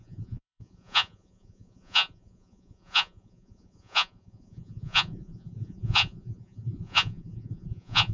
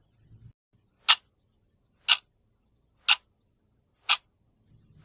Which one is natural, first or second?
second